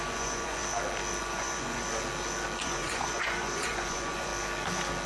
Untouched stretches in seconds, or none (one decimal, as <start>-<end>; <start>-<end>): 0.6-1.2; 1.8-2.6; 4.3-5.1

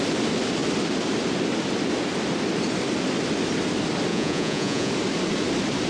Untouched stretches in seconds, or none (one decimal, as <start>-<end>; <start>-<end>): 0.0-4.1; 4.9-5.9

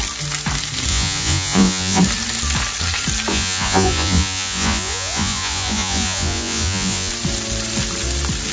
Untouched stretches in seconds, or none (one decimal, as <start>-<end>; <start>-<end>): 0.0-0.9; 2.0-3.3; 7.1-8.5

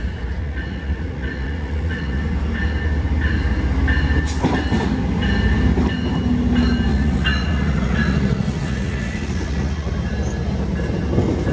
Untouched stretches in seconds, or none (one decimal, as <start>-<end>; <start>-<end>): 0.0-0.4; 2.2-6.9; 9.9-11.5

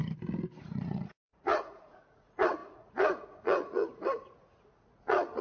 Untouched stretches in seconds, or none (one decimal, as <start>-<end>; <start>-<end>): 0.0-0.6